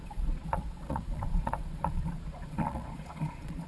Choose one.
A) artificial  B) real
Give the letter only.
A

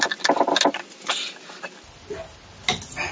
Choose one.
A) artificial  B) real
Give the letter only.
B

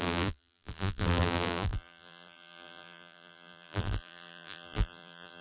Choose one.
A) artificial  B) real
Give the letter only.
A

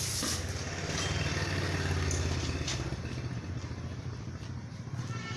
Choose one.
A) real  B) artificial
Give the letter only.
A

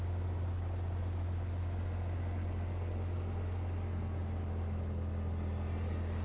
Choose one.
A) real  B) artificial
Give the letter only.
A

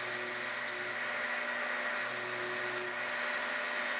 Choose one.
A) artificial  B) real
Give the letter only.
B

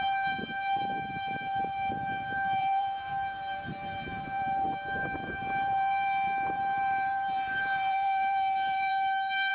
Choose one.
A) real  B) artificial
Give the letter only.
B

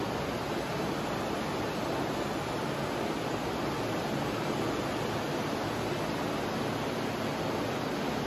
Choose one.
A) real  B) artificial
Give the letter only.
A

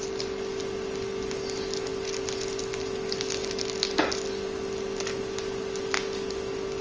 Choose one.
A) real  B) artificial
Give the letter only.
A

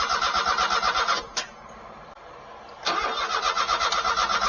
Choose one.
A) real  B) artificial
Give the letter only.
A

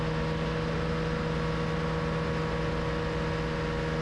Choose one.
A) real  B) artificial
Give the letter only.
A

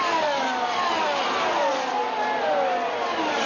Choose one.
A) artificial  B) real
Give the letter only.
B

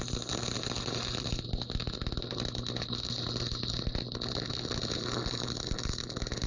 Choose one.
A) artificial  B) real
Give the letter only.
B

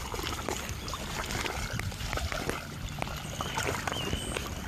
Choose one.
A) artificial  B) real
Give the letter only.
B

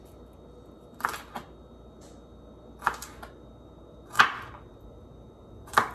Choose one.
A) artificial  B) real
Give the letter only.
B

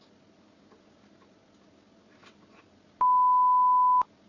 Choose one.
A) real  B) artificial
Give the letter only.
A